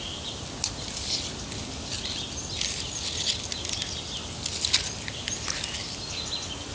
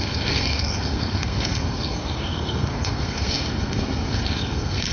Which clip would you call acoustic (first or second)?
first